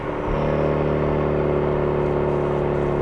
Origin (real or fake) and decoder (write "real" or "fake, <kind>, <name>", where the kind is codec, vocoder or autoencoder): real